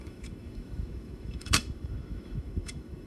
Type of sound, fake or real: fake